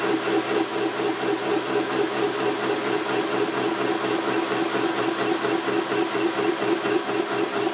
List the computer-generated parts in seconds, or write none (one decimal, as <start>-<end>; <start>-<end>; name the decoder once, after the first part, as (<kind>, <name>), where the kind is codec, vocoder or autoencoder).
none